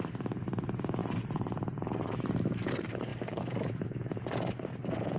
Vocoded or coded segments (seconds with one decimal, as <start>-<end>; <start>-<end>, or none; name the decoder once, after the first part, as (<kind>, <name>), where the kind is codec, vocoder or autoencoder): 0.0-5.2 (vocoder, BigVGAN v2)

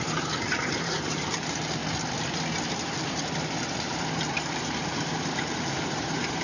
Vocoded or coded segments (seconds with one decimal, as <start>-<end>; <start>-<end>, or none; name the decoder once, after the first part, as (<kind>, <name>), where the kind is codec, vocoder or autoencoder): 0.0-1.8 (vocoder, BigVGAN v2); 2.6-6.4

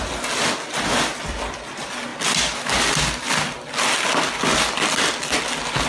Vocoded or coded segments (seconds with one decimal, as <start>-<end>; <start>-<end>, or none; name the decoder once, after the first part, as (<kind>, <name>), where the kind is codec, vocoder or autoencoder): none

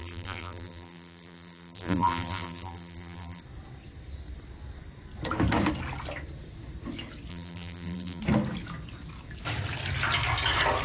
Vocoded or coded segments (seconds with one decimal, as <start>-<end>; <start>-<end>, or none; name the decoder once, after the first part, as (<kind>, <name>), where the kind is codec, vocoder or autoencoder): 0.0-3.4 (vocoder, BigVGAN v2); 7.3-8.2

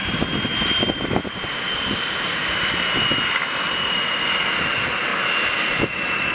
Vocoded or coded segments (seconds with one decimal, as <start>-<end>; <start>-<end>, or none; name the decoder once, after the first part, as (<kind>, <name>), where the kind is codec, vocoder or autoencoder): 0.0-2.7 (vocoder, BigVGAN v2)

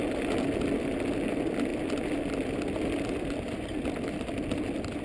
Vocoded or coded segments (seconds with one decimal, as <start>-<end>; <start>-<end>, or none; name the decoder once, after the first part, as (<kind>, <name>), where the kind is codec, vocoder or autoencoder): none